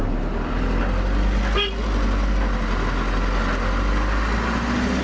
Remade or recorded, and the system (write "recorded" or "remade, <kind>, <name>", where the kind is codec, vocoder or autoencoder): recorded